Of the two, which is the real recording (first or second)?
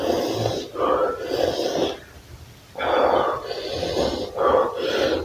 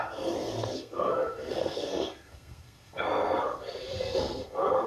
first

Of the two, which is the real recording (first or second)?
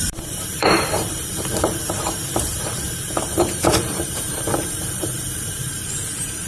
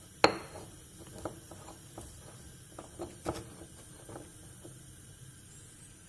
second